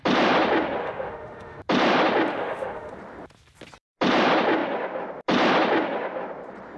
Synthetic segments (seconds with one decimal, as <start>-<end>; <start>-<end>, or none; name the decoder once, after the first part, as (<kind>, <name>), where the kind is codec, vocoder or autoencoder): 0.8-1.6 (autoencoder, DAC-VAE); 2.3-2.9